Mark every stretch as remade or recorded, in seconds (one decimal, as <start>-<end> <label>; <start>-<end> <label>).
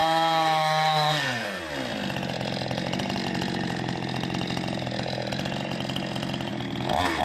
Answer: 0.0-1.6 remade; 1.6-7.2 recorded